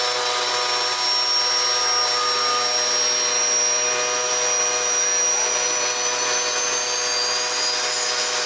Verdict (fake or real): real